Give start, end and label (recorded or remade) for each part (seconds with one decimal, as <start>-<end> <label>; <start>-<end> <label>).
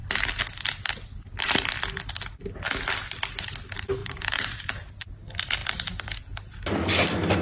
0.0-4.0 recorded; 4.0-4.9 remade; 4.9-7.4 recorded